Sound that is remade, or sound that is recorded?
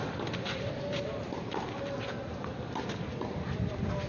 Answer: recorded